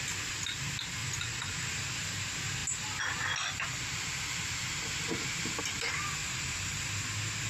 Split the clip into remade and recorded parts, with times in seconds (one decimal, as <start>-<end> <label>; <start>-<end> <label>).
0.0-1.0 recorded; 1.0-1.7 remade; 1.7-6.2 recorded; 6.2-6.8 remade; 6.8-7.5 recorded